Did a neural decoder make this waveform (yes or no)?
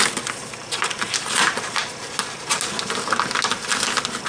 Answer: no